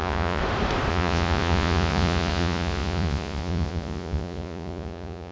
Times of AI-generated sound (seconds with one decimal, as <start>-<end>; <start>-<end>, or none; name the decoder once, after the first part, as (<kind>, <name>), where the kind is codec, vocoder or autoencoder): 0.0-0.4 (vocoder, Vocos); 0.9-5.3